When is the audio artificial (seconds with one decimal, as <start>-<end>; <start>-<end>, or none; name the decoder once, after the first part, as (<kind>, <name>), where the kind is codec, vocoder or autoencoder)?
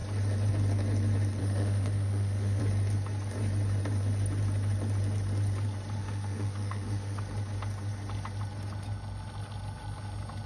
1.4-2.6 (autoencoder, DAC-VAE); 6.0-7.2